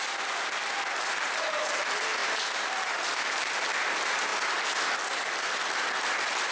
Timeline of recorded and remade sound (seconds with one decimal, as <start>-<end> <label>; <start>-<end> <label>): 0.0-1.1 recorded; 1.1-1.8 remade; 1.8-2.2 recorded; 2.2-3.5 remade; 3.5-6.5 recorded